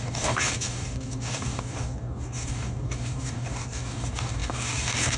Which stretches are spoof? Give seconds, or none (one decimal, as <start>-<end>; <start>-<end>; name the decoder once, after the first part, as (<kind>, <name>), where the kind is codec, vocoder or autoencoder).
0.0-5.2 (codec, DAC)

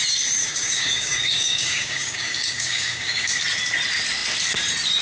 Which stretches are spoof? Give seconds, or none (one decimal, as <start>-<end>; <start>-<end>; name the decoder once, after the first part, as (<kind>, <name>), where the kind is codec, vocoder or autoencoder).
0.4-3.4 (codec, DAC)

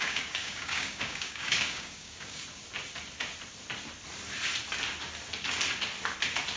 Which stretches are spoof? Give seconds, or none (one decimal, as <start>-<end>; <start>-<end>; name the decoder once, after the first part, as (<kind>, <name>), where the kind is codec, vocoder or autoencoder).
0.0-2.4 (codec, DAC)

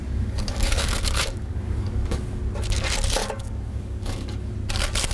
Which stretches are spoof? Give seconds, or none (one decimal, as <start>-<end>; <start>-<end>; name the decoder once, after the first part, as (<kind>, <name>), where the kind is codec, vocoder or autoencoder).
0.0-2.4 (codec, DAC); 3.2-4.5

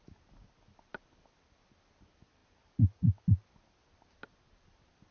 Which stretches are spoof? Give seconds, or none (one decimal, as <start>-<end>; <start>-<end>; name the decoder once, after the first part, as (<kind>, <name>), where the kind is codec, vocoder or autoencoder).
none

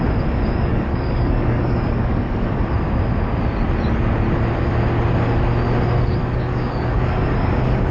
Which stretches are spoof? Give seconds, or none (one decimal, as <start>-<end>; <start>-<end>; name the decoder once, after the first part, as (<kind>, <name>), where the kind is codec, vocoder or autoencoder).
0.5-2.7 (codec, DAC); 6.2-7.9

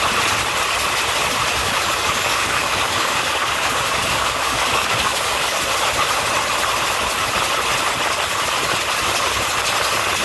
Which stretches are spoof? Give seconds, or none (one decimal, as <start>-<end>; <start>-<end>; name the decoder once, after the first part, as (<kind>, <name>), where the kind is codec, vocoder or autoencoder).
1.6-5.6 (codec, DAC)

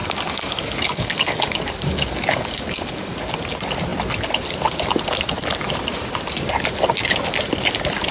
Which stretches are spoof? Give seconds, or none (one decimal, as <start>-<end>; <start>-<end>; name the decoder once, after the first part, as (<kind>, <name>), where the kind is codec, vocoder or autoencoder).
0.0-3.3 (codec, DAC)